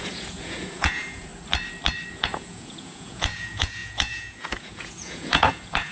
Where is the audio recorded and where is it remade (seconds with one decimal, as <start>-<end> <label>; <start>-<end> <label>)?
0.0-1.3 remade; 1.3-2.1 recorded; 2.1-5.9 remade